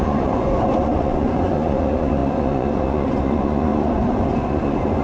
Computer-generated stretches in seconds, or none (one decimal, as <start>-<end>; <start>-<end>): 0.0-5.0